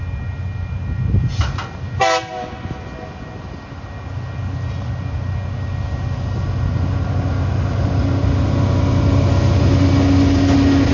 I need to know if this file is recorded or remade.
recorded